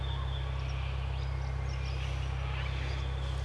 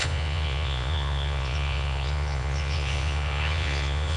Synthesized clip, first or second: second